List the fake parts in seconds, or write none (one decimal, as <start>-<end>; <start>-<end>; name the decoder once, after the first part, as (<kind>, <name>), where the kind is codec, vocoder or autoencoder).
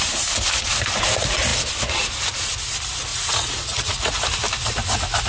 3.1-4.2 (vocoder, Vocos)